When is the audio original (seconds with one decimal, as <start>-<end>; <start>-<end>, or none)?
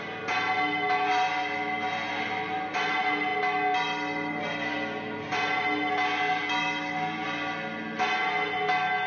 0.0-9.1